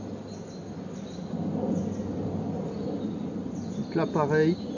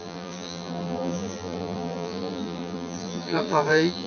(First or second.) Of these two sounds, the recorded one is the first